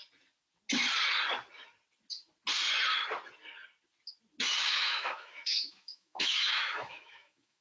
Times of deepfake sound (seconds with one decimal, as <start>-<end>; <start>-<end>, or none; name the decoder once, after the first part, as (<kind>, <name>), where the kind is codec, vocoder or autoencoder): 4.6-7.6 (autoencoder, DAC-VAE)